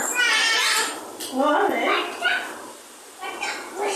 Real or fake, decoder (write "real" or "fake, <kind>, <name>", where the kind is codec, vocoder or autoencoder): real